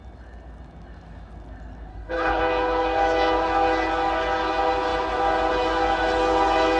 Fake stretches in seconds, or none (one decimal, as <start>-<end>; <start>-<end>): 1.9-2.4